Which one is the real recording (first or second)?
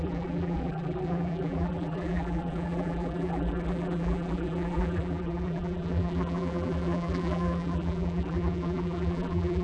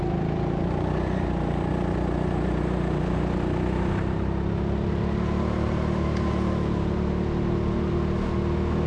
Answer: second